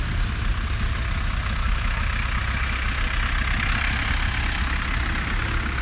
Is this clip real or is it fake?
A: real